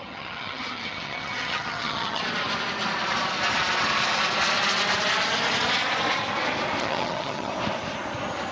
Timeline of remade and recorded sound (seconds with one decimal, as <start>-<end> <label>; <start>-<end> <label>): 0.0-2.2 remade; 2.2-6.8 recorded; 6.8-7.5 remade; 7.5-8.5 recorded